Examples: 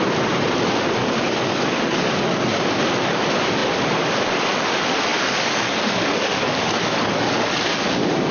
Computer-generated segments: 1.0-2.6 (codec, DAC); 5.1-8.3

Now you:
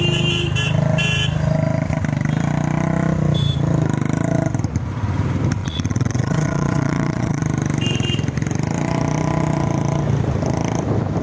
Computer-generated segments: 5.6-7.4 (vocoder, Vocos)

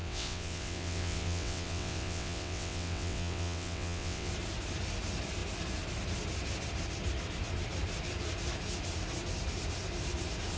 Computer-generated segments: 0.0-4.3 (vocoder, WaveNeXt)